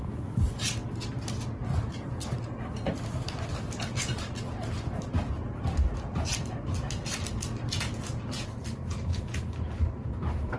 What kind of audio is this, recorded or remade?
recorded